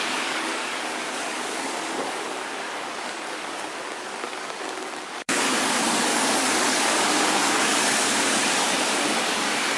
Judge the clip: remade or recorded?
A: remade